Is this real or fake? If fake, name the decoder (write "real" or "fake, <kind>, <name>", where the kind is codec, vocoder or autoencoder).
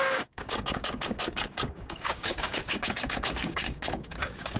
fake, codec, DAC